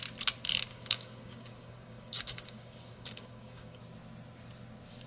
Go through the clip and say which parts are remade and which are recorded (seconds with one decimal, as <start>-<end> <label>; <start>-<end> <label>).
0.0-0.7 recorded; 0.7-3.8 remade; 3.8-5.1 recorded